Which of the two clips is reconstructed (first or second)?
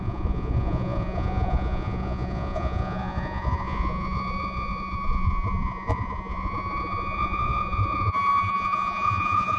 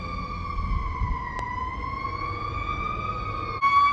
first